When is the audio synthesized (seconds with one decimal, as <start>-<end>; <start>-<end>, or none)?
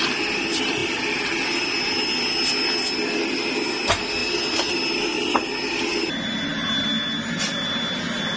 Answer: none